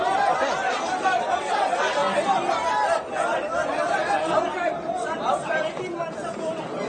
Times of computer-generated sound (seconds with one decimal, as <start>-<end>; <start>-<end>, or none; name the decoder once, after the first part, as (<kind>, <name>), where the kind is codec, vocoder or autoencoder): none